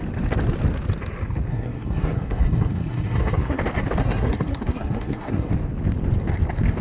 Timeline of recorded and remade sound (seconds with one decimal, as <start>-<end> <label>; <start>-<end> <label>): 0.0-1.5 recorded; 1.5-3.6 remade; 3.6-4.0 recorded; 4.0-5.5 remade; 5.5-6.8 recorded